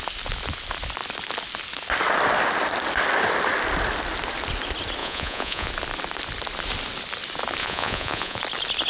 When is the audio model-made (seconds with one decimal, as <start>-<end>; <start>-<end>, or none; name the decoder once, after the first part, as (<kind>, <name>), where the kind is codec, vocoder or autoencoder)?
5.0-5.7 (vocoder, Vocos); 7.6-8.4